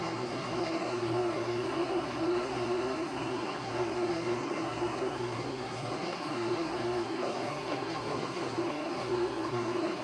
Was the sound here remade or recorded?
remade